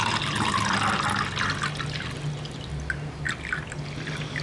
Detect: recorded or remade recorded